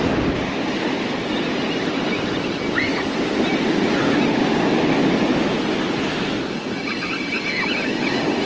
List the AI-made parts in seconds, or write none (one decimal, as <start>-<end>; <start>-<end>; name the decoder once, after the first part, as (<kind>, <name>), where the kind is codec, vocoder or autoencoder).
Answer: none